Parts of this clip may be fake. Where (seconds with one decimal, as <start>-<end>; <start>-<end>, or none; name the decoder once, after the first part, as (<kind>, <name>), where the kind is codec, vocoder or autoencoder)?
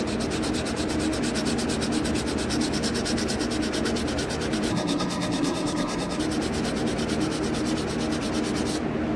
4.7-6.2 (codec, SNAC)